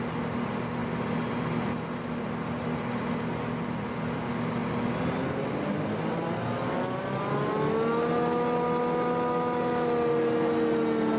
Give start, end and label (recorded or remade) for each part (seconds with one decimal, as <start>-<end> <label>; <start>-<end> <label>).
0.0-11.2 recorded